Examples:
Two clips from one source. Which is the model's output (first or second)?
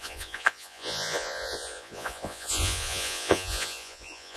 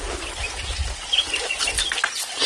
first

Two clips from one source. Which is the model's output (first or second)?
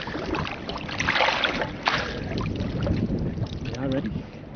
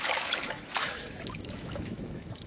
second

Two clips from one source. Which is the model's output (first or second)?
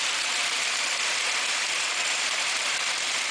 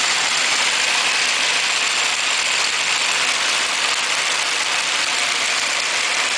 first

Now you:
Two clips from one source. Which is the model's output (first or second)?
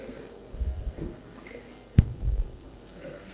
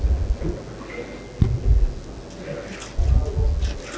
first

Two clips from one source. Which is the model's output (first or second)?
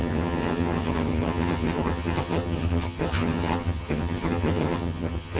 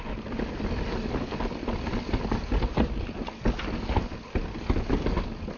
first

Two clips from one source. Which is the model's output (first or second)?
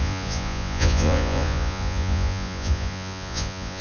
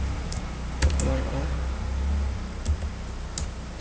first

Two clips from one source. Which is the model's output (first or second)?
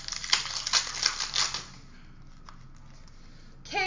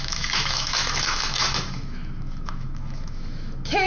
second